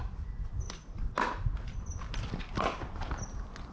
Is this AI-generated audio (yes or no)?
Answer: no